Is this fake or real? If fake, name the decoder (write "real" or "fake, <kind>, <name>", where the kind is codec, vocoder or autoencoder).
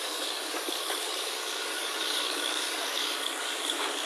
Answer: fake, codec, DAC